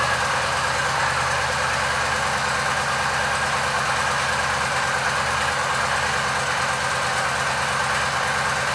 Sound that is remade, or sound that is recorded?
recorded